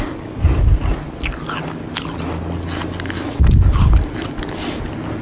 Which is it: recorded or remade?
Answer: recorded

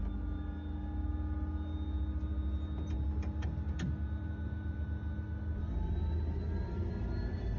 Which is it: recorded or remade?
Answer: recorded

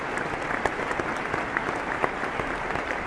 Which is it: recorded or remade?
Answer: recorded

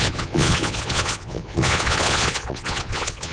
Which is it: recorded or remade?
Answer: remade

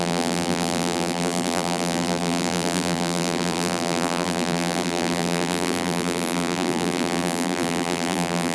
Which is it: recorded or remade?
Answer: remade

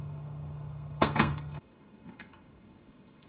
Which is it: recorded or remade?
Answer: remade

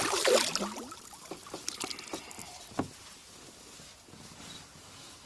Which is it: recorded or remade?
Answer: recorded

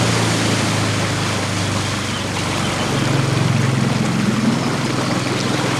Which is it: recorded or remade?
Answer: recorded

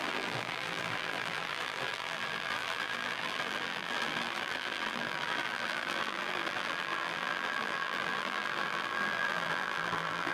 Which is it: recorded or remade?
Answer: remade